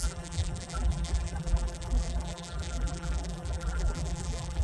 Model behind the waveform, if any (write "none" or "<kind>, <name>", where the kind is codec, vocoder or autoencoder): vocoder, BigVGAN v2